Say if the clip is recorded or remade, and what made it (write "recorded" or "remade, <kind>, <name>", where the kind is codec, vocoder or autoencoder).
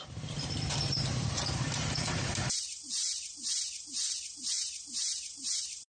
remade, vocoder, BigVGAN v2